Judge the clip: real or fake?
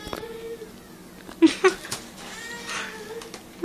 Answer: real